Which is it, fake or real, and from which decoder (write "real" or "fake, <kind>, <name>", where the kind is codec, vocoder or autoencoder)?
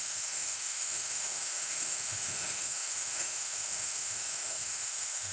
fake, autoencoder, DAC-VAE